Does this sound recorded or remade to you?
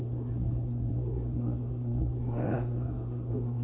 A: remade